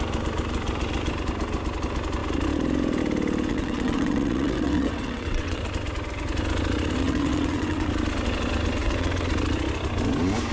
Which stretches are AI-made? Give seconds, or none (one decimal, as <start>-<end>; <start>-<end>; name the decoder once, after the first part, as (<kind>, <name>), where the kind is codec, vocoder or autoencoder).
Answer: 3.5-5.6 (vocoder, WaveNeXt); 7.0-7.9; 8.8-9.3